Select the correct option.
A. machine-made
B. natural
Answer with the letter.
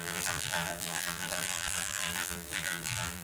A